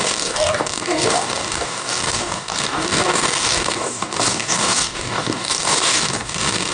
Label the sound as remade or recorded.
remade